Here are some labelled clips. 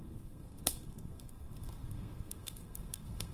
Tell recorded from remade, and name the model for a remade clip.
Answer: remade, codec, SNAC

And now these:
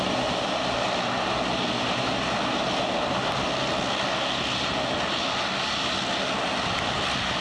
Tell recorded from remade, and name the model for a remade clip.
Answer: recorded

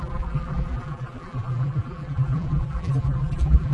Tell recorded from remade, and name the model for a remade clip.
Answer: remade, vocoder, BigVGAN v2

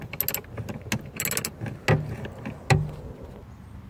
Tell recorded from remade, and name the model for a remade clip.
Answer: recorded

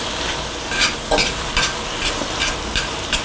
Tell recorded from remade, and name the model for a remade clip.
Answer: recorded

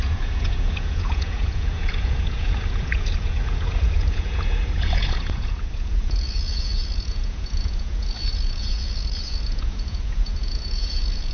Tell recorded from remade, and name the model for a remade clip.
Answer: remade, vocoder, Vocos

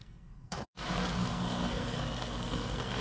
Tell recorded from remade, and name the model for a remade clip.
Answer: remade, codec, SNAC